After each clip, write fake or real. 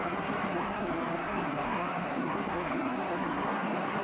fake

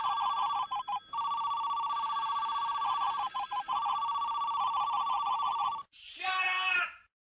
fake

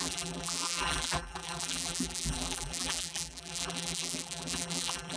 fake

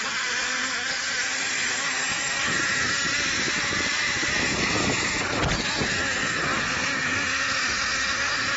real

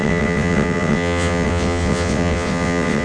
fake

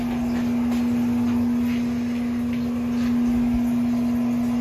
real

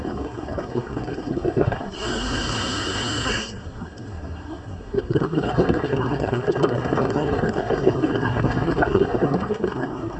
fake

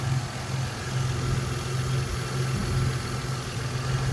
real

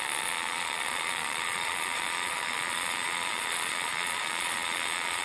fake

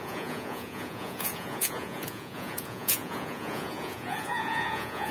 fake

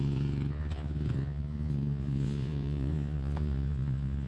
fake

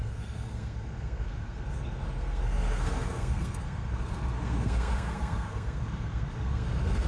fake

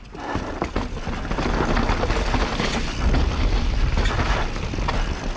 real